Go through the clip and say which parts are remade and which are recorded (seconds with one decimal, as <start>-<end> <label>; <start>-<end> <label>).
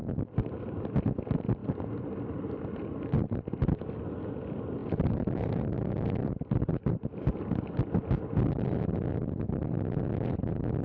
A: 0.0-0.8 remade; 0.8-1.6 recorded; 1.6-3.9 remade; 3.9-4.8 recorded; 4.8-7.7 remade; 7.7-10.8 recorded